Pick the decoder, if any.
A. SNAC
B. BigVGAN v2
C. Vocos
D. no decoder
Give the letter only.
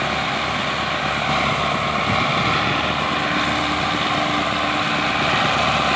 D